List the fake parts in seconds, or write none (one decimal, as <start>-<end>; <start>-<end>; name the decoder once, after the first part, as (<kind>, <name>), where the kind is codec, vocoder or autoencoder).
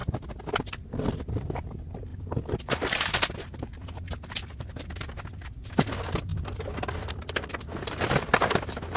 2.1-3.2 (vocoder, BigVGAN v2)